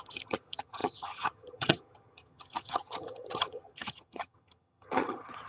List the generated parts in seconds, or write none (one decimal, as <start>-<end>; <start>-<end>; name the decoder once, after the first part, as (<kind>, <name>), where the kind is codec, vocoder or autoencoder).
0.0-5.5 (vocoder, HiFi-GAN)